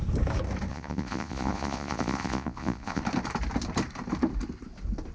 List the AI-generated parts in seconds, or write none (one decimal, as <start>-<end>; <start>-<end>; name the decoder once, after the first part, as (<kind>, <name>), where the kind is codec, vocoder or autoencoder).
0.7-3.0 (vocoder, Vocos)